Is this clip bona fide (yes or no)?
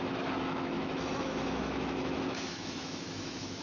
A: no